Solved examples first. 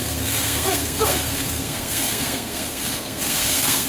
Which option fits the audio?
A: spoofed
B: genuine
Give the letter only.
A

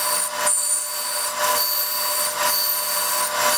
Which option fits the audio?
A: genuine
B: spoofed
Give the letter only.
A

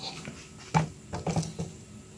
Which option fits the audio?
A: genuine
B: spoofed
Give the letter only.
A